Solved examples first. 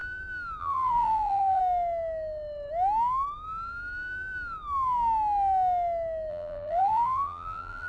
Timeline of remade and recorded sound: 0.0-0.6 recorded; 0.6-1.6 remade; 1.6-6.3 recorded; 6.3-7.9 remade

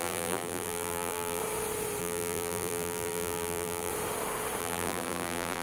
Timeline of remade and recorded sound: 0.0-1.4 remade; 1.4-2.0 recorded; 2.0-3.9 remade; 3.9-4.6 recorded; 4.6-5.6 remade

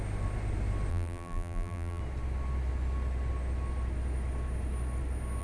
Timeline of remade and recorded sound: 0.0-0.9 recorded; 0.9-2.0 remade; 2.0-5.4 recorded

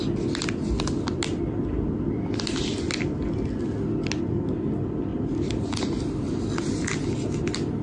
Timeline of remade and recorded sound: 0.0-5.1 recorded; 5.1-6.4 remade; 6.4-7.8 recorded

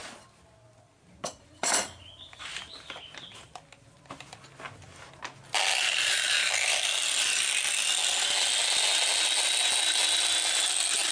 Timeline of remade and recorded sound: 0.0-6.4 recorded; 6.4-7.2 remade; 7.2-11.1 recorded

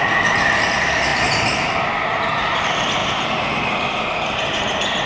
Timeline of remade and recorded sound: 0.0-3.0 recorded; 3.0-3.6 remade; 3.6-5.1 recorded

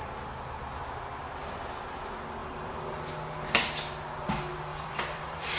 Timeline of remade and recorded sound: 0.0-2.4 recorded; 2.4-3.0 remade; 3.0-4.7 recorded; 4.7-5.6 remade